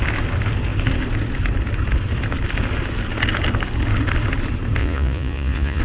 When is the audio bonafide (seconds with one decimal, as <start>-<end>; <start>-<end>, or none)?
0.0-4.8